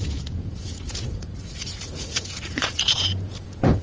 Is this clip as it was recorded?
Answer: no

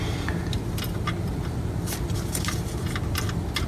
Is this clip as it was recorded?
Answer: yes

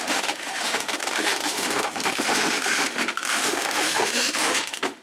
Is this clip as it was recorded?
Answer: no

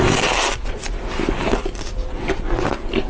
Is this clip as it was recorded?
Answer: yes